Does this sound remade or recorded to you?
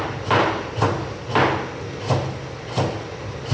recorded